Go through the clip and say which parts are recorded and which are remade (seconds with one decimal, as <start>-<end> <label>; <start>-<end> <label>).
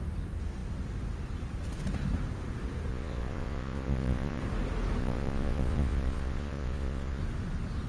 0.0-2.9 recorded; 2.9-4.4 remade; 4.4-5.0 recorded; 5.0-7.2 remade; 7.2-7.9 recorded